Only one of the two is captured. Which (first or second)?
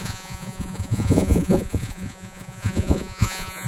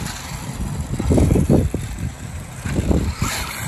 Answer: second